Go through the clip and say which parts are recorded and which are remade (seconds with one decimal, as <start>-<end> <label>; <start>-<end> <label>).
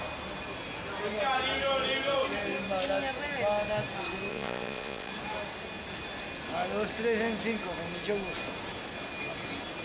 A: 0.0-4.3 recorded; 4.3-5.1 remade; 5.1-9.8 recorded